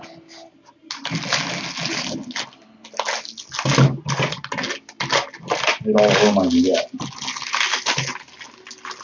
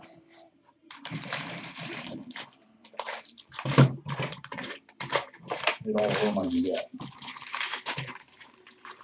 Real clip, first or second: first